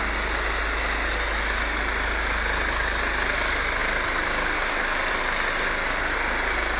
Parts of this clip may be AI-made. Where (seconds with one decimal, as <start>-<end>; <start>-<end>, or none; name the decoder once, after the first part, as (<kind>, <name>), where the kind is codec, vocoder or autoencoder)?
3.8-5.2 (vocoder, BigVGAN v2)